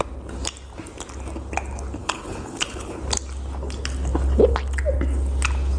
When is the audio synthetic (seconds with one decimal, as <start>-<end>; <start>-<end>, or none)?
2.0-3.0